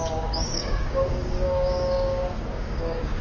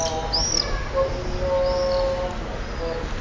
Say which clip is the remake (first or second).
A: first